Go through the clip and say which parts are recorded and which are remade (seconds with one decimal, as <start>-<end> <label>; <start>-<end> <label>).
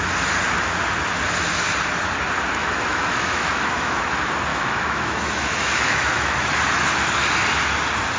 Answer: 0.0-2.6 recorded; 2.6-4.0 remade; 4.0-4.5 recorded; 4.5-6.5 remade; 6.5-8.2 recorded